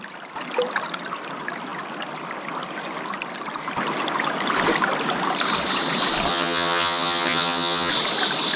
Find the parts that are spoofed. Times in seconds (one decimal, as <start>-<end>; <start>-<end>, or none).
6.3-7.9